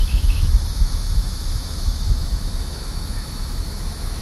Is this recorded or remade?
remade